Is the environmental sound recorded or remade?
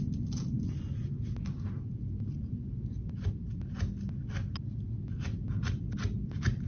recorded